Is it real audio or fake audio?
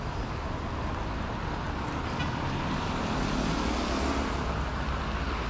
real